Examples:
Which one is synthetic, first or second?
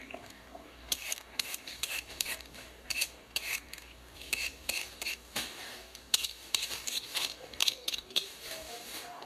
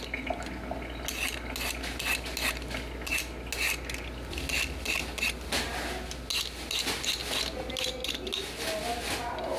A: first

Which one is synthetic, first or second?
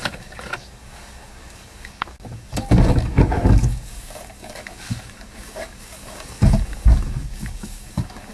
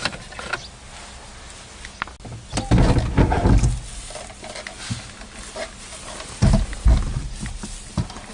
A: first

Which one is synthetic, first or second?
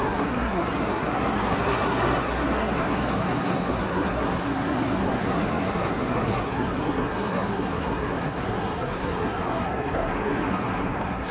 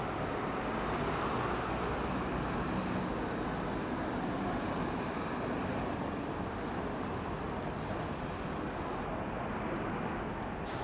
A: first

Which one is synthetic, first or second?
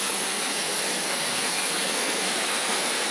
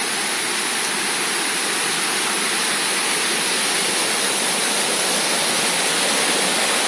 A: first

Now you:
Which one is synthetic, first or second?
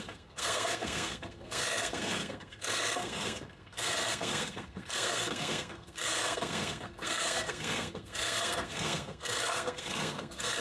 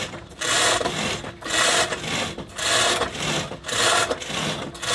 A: first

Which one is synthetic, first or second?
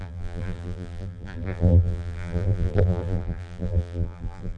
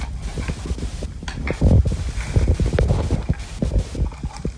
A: first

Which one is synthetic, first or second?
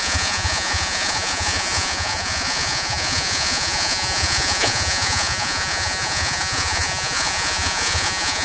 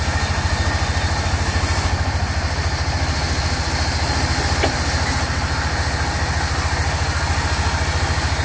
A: first